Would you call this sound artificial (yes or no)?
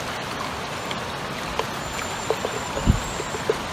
no